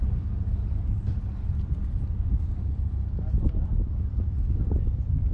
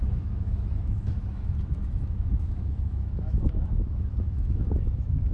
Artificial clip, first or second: second